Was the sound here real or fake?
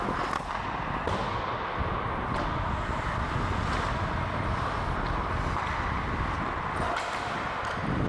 real